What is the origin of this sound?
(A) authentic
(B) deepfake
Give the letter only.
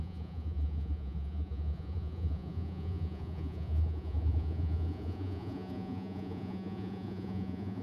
B